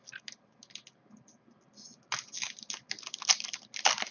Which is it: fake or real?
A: real